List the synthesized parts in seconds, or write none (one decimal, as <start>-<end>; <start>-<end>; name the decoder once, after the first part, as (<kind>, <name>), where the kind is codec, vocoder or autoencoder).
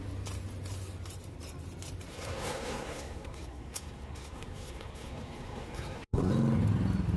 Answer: 2.1-6.3 (codec, SNAC)